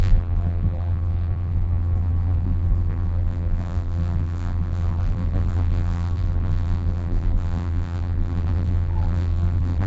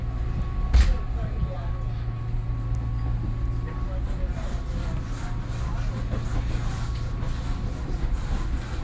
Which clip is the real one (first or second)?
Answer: second